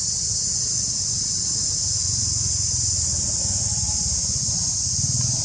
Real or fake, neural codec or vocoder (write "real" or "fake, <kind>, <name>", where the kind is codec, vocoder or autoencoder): real